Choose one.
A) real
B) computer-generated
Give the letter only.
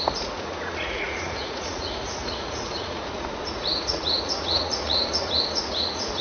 B